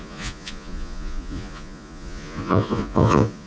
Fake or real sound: fake